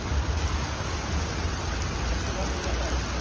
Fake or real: real